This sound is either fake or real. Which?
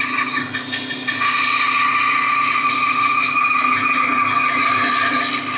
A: real